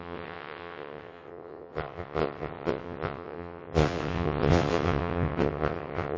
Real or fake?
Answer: fake